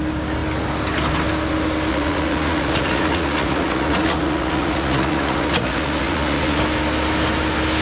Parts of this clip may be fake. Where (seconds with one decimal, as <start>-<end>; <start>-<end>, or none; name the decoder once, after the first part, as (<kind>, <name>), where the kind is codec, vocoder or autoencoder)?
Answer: 1.9-6.6 (vocoder, Vocos)